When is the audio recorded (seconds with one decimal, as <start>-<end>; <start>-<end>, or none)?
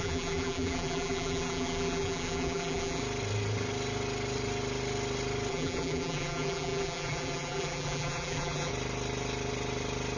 3.0-5.5; 8.7-10.2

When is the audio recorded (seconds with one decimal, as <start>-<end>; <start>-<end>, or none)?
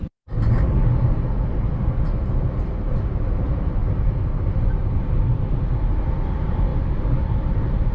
0.0-7.9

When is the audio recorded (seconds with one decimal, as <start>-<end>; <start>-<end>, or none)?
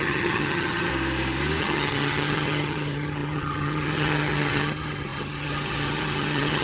0.9-1.6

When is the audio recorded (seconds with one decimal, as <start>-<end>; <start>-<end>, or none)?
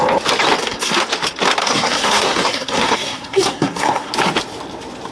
0.0-0.6; 1.1-1.6; 4.1-5.1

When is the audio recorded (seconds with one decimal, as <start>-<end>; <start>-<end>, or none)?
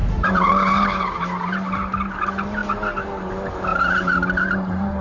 0.5-3.7